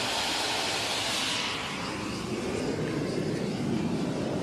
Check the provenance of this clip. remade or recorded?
recorded